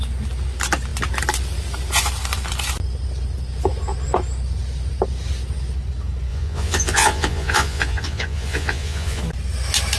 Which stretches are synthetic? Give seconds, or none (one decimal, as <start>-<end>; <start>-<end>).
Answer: 6.3-9.2